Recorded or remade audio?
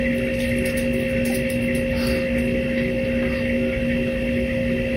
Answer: recorded